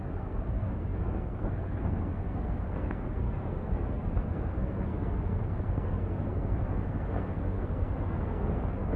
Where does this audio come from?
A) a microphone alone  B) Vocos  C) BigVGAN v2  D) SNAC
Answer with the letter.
D